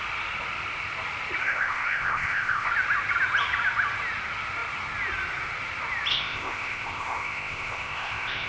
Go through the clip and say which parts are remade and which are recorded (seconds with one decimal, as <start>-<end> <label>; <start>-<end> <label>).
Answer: 0.0-1.4 recorded; 1.4-2.7 remade; 2.7-6.1 recorded; 6.1-8.5 remade